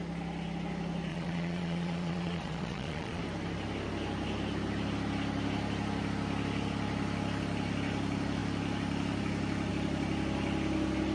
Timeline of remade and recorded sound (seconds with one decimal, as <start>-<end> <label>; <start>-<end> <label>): 0.0-1.1 recorded; 1.1-3.2 remade; 3.2-11.1 recorded